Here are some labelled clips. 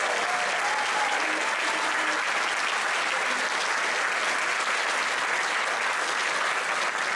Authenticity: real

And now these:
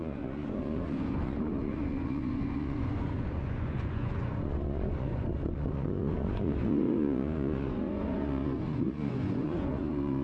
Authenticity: fake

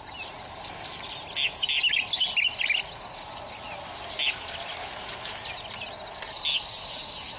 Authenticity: real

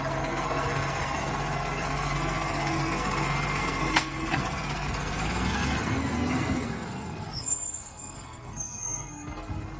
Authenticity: fake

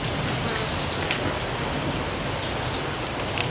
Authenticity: real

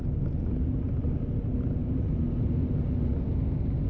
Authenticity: real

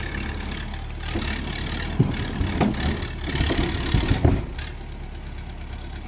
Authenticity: real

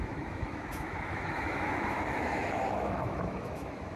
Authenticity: fake